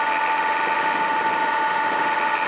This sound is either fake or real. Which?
real